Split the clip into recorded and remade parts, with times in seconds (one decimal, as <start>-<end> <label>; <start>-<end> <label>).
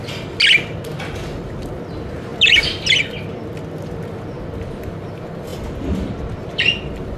0.0-5.5 recorded; 5.5-6.1 remade; 6.1-7.2 recorded